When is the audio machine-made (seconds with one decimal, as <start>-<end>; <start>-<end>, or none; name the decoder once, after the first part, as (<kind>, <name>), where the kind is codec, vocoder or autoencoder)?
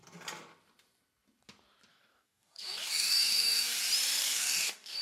1.9-3.8 (codec, DAC); 4.2-5.0